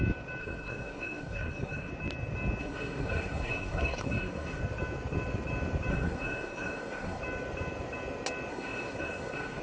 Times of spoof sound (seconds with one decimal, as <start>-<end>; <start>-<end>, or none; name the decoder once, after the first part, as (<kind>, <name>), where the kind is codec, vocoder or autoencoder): 0.4-1.9 (codec, SNAC); 2.6-4.6; 5.9-7.2; 8.5-9.6